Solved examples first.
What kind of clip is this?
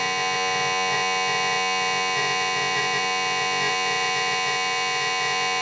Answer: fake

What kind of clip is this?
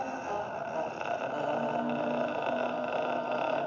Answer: real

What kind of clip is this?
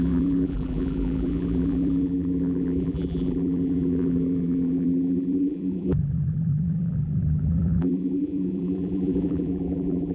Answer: fake